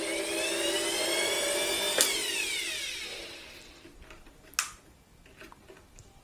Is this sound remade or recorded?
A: recorded